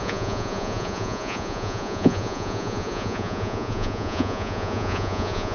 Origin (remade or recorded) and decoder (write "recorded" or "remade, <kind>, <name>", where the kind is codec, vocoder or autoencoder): remade, vocoder, Vocos